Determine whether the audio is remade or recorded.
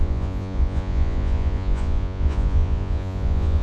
remade